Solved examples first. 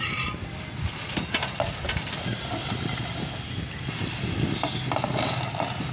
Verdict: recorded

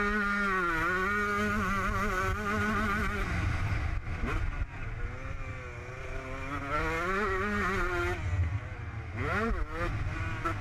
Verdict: recorded